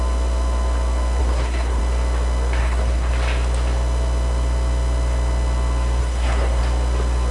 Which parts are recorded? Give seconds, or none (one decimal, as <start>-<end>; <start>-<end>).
0.0-1.2; 1.8-2.6; 3.1-6.0; 6.6-7.3